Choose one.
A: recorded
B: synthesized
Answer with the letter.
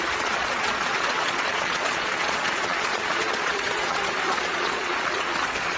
B